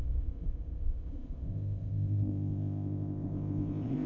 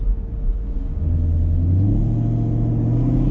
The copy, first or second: first